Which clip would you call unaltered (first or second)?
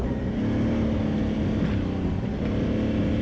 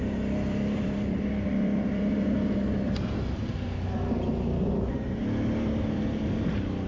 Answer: first